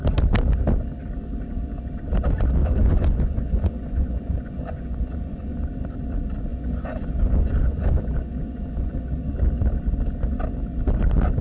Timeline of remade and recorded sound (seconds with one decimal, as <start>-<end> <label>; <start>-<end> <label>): 0.0-2.6 recorded; 2.6-5.6 remade; 5.6-6.5 recorded; 6.5-9.2 remade; 9.2-11.4 recorded